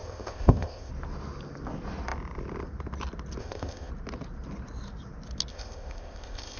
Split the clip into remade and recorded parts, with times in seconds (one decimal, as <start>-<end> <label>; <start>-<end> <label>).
0.0-0.9 remade; 0.9-3.4 recorded; 3.4-3.9 remade; 3.9-5.5 recorded; 5.5-6.6 remade